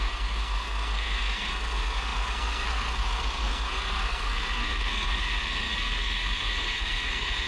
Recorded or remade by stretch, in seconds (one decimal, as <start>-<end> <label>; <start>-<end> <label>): 0.0-7.5 remade